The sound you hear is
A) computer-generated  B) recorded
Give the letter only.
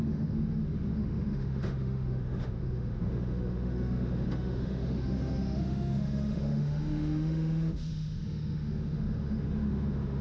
A